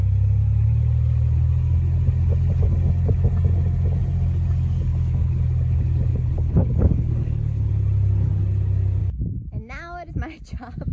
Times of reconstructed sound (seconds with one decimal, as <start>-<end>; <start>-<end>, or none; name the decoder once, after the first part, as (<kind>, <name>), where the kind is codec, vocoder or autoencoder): 4.9-5.4 (codec, HILCodec); 6.1-7.7